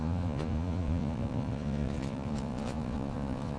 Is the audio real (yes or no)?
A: no